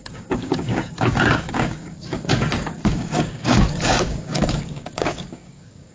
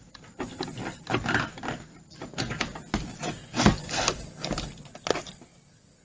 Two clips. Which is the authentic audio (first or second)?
second